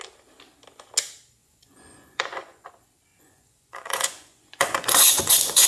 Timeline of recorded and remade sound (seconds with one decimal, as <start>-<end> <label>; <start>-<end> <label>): 0.0-1.4 recorded; 1.4-2.7 remade; 2.7-3.1 recorded; 3.1-5.7 remade